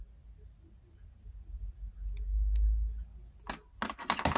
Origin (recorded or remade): recorded